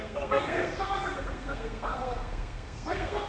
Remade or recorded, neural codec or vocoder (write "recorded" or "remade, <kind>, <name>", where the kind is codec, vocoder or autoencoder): remade, codec, SNAC